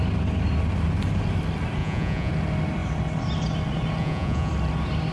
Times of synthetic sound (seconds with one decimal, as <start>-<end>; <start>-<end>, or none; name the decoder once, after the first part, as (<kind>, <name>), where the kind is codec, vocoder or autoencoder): 1.8-2.3 (vocoder, Vocos); 4.0-4.5